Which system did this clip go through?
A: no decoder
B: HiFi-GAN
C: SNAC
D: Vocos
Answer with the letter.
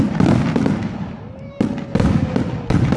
A